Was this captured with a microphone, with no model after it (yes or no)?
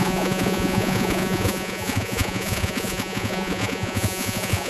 no